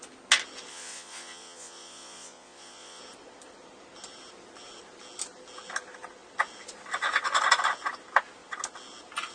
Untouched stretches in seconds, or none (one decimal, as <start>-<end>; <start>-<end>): 0.0-0.7; 3.0-9.3